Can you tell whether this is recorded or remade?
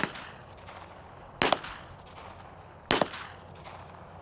recorded